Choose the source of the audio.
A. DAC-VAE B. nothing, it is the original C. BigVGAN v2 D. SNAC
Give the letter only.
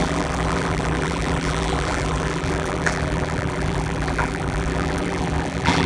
C